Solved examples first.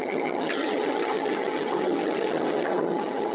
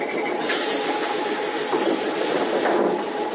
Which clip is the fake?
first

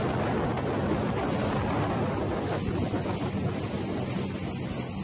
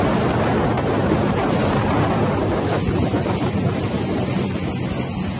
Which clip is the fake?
second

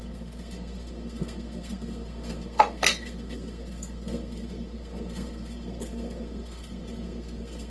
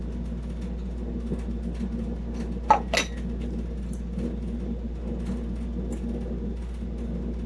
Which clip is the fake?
first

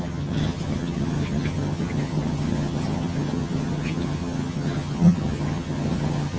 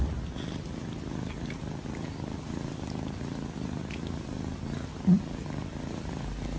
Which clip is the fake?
first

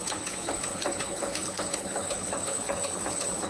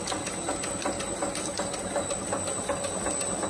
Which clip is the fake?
first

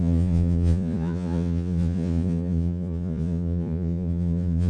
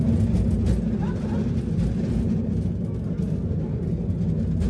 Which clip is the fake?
first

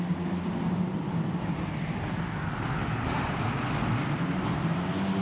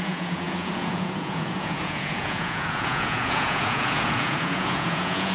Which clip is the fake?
second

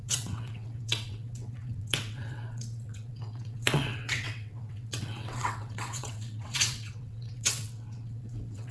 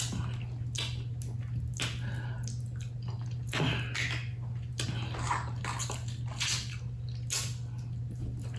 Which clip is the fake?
first